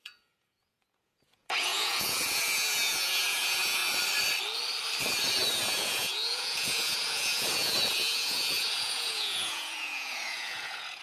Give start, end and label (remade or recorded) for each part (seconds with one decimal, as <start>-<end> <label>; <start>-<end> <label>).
0.0-3.8 remade; 3.8-5.5 recorded; 5.5-11.0 remade